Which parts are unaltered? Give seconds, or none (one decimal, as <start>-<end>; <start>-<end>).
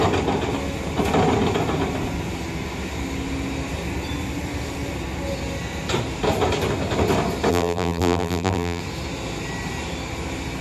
0.0-7.5; 8.8-10.6